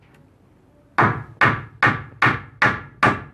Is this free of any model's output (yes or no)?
yes